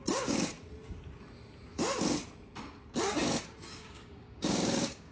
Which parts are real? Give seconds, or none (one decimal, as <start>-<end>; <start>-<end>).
0.5-3.6